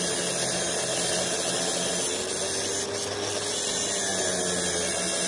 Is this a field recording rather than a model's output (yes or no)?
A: yes